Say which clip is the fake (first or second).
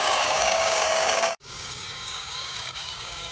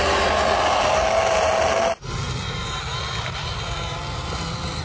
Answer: first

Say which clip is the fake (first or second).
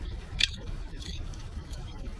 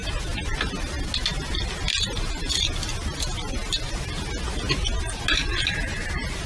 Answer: first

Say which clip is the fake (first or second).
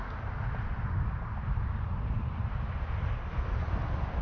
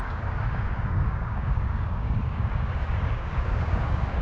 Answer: second